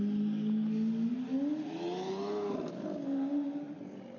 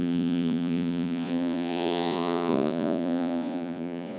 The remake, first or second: second